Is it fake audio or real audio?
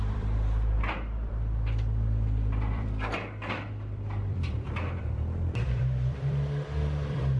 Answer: fake